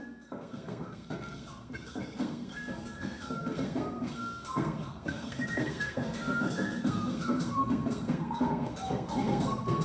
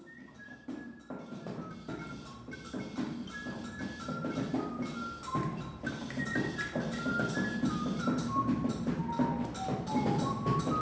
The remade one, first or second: first